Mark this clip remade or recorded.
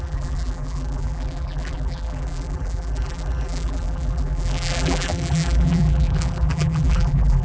remade